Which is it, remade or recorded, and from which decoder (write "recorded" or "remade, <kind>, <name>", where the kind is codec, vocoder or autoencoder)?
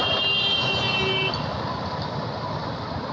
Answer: recorded